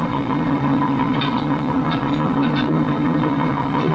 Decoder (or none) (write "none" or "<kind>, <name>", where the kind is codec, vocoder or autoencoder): vocoder, Vocos